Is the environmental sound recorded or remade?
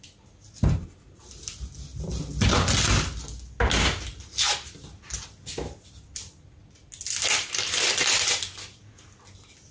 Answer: recorded